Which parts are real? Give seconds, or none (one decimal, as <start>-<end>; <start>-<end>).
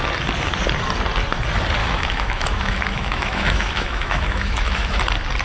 0.0-1.8; 5.0-5.4